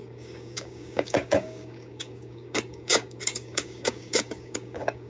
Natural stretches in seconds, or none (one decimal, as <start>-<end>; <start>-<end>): none